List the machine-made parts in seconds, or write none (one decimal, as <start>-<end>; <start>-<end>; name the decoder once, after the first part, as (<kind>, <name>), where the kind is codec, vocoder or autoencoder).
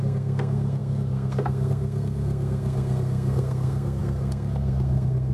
0.0-5.3 (codec, SNAC)